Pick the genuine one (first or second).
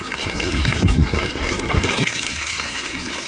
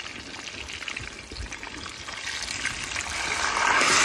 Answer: second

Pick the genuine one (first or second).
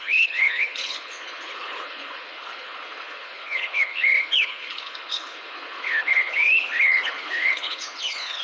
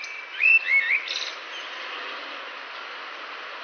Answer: second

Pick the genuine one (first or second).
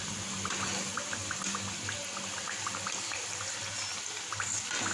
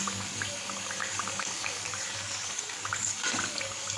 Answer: first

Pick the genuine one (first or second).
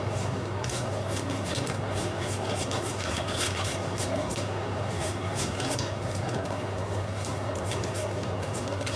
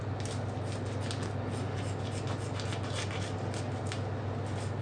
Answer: second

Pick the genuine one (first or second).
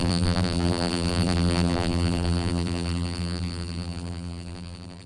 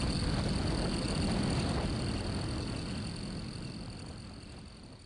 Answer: second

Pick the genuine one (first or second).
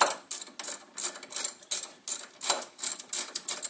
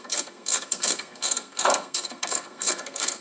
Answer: first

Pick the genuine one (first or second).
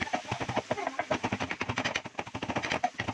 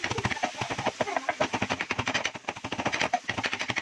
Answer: first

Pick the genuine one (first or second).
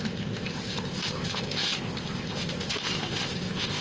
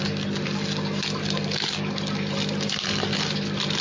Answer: second